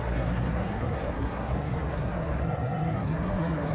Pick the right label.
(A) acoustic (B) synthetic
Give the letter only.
B